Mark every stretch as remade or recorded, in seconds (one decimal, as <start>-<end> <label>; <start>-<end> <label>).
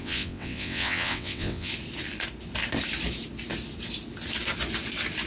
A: 0.0-1.7 remade; 1.7-5.3 recorded